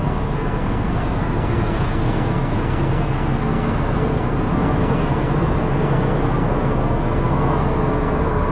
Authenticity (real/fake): fake